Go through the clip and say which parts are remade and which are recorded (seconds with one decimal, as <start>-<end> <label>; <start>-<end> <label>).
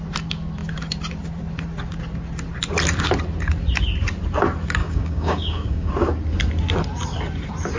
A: 0.0-4.8 recorded; 4.8-5.9 remade; 5.9-7.8 recorded